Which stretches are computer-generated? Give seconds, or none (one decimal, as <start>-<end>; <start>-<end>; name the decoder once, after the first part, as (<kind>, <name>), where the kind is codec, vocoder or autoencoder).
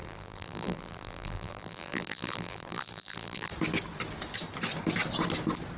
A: 0.0-3.5 (vocoder, BigVGAN v2)